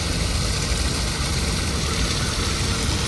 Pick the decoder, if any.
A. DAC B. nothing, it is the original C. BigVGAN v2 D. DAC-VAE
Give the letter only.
B